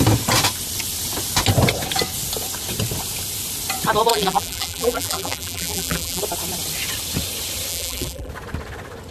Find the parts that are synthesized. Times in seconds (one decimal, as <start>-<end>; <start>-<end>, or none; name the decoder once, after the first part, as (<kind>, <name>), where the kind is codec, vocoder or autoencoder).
4.1-6.2 (vocoder, BigVGAN v2); 7.7-8.3